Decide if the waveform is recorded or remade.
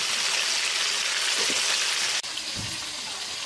recorded